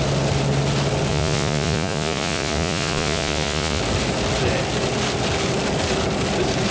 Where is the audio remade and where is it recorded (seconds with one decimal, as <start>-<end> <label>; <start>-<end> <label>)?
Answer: 0.0-1.1 recorded; 1.1-3.8 remade; 3.8-6.7 recorded